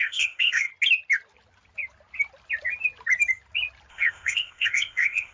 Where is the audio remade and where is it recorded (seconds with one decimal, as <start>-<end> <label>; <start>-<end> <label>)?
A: 0.0-0.7 remade; 0.7-3.9 recorded; 3.9-5.3 remade